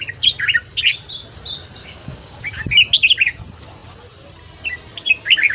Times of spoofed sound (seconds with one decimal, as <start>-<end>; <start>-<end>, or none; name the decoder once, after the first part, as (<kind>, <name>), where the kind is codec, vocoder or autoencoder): 1.8-2.4 (codec, DAC)